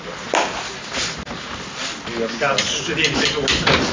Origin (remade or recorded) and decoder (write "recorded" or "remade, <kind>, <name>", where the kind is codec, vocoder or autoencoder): recorded